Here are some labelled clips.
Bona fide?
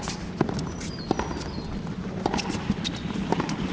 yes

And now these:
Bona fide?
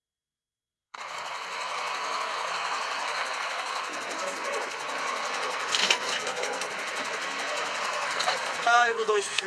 no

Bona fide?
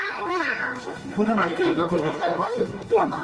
no